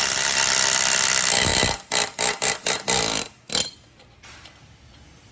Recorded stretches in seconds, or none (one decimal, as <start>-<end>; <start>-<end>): 0.0-5.3